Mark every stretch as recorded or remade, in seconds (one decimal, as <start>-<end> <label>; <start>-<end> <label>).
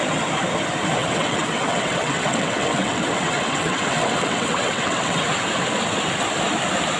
0.0-1.0 recorded; 1.0-5.2 remade; 5.2-7.0 recorded